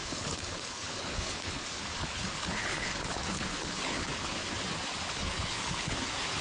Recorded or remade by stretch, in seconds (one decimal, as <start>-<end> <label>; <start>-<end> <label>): 0.0-4.4 remade; 4.4-5.0 recorded; 5.0-6.4 remade